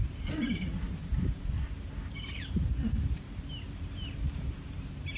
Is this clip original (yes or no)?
no